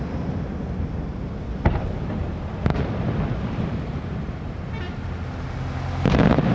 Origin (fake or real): real